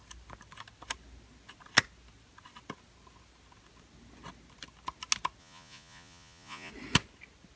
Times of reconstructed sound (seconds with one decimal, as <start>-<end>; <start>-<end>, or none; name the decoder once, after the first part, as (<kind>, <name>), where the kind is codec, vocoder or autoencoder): 5.4-6.7 (vocoder, Vocos)